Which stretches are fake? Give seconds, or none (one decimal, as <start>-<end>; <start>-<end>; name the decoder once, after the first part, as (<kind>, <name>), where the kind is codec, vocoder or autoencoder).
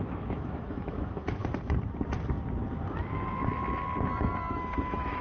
0.0-1.4 (autoencoder, DAC-VAE); 4.5-5.2